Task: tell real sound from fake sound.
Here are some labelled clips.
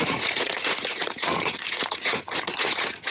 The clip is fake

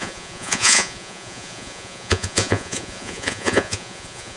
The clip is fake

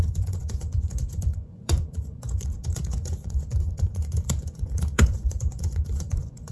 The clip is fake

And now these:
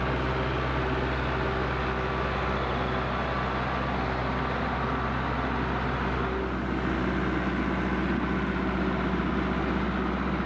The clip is real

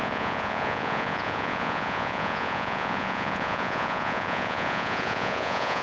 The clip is fake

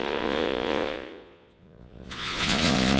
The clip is fake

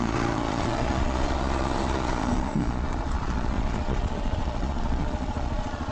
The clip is fake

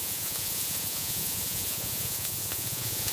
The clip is fake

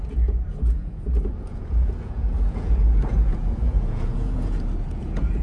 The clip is fake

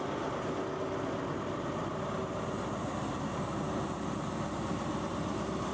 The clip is real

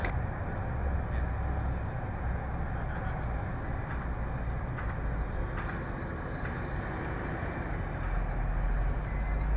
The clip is real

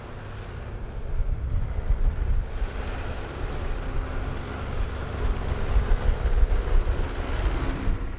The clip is real